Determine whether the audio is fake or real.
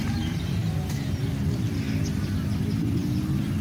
real